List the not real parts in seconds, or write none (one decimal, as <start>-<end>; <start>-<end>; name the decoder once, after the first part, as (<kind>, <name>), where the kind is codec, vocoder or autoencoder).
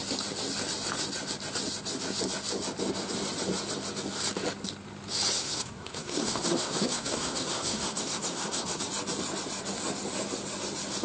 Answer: 5.4-8.8 (codec, SNAC)